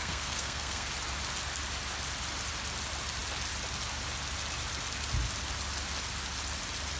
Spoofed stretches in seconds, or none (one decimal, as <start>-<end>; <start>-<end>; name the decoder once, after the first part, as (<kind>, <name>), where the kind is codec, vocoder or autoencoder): 0.0-0.9 (codec, SNAC)